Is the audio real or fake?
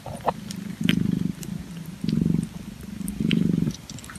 real